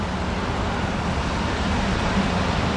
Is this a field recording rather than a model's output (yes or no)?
yes